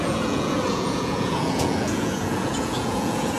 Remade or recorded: remade